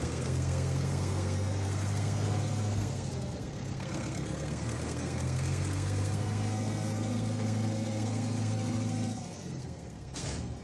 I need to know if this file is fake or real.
fake